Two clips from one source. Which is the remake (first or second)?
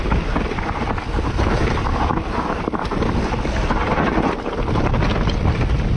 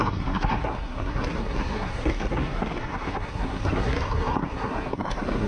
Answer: second